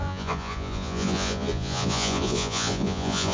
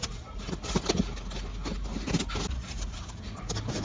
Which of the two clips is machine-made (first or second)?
first